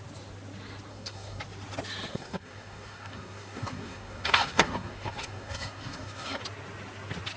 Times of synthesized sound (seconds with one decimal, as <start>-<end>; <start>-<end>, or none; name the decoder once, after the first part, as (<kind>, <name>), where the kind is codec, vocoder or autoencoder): 0.9-1.4 (codec, SNAC); 2.1-6.4